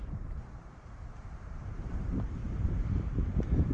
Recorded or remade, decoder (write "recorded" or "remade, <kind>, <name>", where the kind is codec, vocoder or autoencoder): remade, vocoder, BigVGAN v2